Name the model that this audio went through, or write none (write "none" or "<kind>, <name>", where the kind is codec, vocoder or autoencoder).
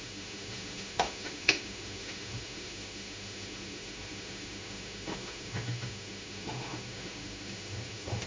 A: autoencoder, DAC-VAE